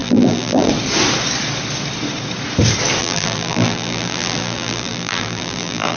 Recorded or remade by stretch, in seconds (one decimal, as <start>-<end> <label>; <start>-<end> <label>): 0.0-0.7 remade; 0.7-3.0 recorded; 3.0-6.0 remade